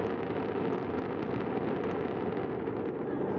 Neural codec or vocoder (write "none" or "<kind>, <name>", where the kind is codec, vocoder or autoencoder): none